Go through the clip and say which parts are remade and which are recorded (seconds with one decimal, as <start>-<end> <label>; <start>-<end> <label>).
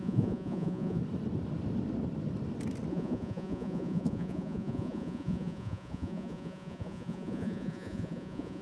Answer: 0.0-1.0 remade; 1.0-2.9 recorded; 2.9-8.6 remade